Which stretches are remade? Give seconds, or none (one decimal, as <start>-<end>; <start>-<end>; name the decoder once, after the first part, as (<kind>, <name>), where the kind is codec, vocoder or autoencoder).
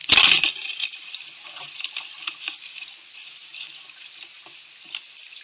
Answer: none